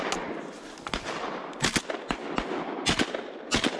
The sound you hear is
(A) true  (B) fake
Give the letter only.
A